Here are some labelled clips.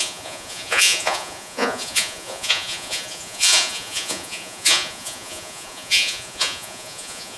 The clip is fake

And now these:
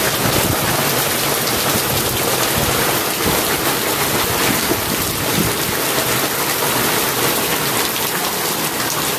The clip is real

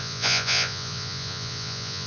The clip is fake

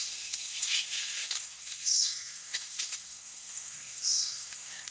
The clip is fake